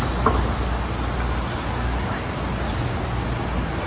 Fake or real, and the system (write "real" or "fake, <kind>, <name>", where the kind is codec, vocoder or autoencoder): real